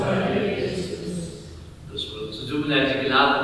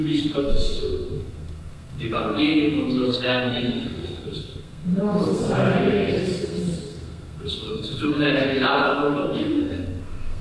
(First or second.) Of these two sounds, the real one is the first